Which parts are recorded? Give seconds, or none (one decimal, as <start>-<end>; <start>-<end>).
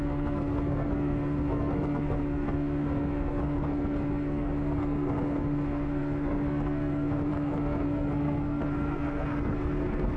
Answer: none